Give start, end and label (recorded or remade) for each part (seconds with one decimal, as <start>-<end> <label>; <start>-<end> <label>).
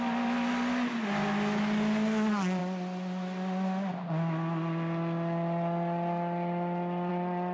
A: 0.0-7.5 recorded